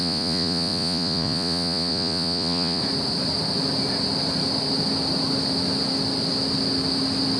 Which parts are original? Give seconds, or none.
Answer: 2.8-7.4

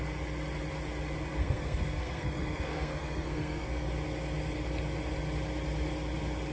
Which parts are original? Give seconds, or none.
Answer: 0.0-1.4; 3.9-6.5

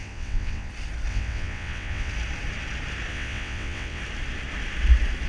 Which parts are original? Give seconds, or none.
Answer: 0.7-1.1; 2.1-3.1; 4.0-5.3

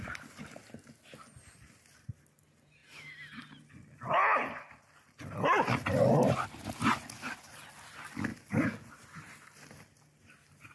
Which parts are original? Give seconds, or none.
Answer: 0.0-8.3; 9.5-10.7

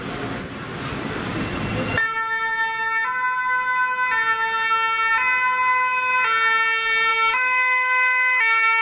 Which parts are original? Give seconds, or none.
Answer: 0.0-7.1

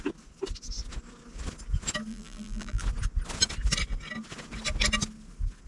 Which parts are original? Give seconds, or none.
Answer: 0.0-2.1; 2.8-5.7